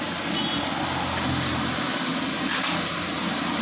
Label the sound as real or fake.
real